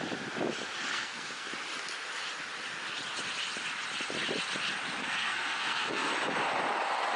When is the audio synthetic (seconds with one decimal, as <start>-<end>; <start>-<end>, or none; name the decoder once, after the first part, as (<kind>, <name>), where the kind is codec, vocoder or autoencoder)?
0.9-1.5 (codec, SNAC); 5.0-6.1